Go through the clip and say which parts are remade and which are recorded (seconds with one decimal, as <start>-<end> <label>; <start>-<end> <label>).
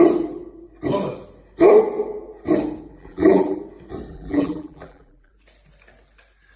0.0-2.9 recorded; 2.9-3.6 remade; 3.6-4.1 recorded; 4.1-5.3 remade; 5.3-6.6 recorded